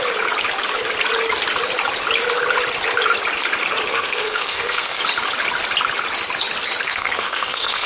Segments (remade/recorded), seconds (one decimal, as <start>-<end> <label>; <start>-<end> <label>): 0.0-3.9 recorded; 3.9-5.0 remade; 5.0-6.9 recorded; 6.9-7.9 remade